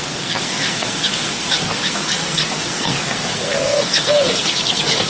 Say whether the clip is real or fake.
fake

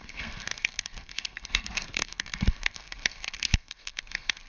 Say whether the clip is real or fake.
fake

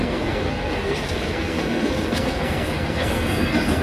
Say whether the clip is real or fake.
fake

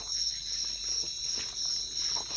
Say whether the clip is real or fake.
real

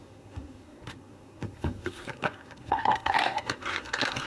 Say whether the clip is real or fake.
fake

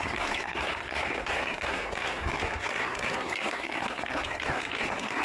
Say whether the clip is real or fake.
fake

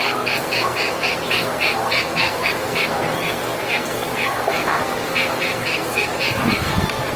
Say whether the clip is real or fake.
fake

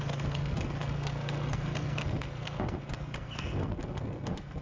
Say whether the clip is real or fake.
fake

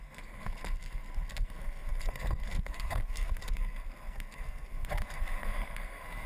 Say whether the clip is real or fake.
fake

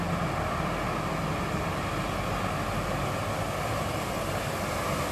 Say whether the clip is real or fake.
real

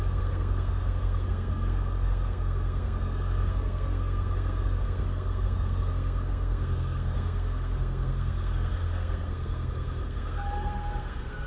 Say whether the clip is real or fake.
fake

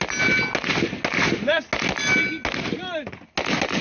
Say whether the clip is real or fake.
real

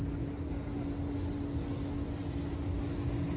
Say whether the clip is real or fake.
real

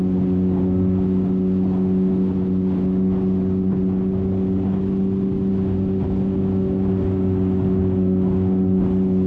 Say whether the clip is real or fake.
real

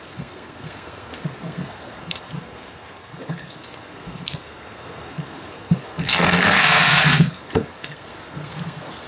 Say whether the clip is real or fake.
fake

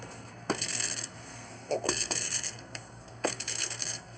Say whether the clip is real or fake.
fake